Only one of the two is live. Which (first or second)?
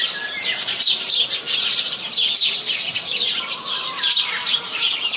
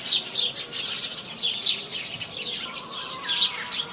second